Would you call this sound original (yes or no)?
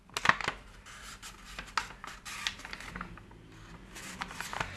yes